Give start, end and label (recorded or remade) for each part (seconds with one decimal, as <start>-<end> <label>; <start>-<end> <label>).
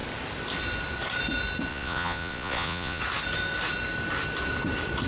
0.0-1.7 recorded; 1.7-3.0 remade; 3.0-5.1 recorded